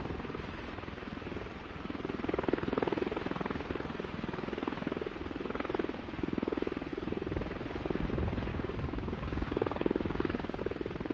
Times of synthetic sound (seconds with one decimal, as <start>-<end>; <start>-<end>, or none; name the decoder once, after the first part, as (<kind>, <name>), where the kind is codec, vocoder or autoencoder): 8.5-10.6 (codec, DAC)